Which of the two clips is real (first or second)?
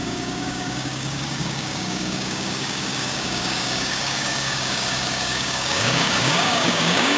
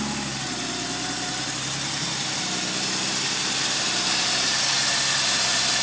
second